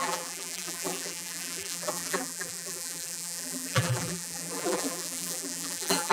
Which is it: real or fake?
fake